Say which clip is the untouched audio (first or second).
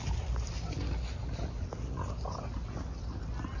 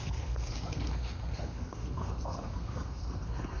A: first